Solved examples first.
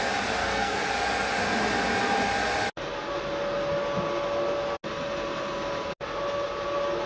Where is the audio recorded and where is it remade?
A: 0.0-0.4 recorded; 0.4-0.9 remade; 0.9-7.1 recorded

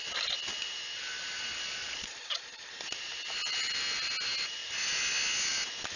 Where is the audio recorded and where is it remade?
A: 0.0-1.8 recorded; 1.8-2.7 remade; 2.7-6.0 recorded

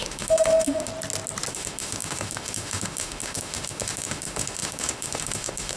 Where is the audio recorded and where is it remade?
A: 0.0-0.9 remade; 0.9-1.5 recorded; 1.5-5.8 remade

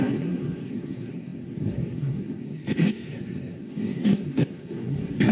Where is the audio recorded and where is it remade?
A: 0.0-5.3 remade

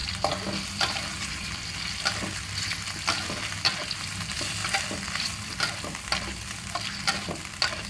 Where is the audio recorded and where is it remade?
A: 0.0-7.9 recorded

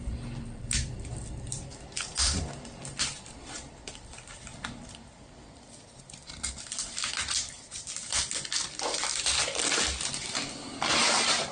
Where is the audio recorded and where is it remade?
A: 0.0-1.7 remade; 1.7-3.9 recorded; 3.9-9.3 remade; 9.3-9.8 recorded; 9.8-11.5 remade

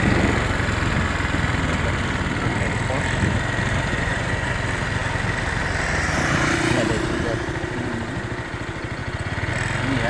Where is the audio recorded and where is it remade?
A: 0.0-3.9 recorded; 3.9-4.5 remade; 4.5-9.0 recorded; 9.0-9.5 remade; 9.5-10.1 recorded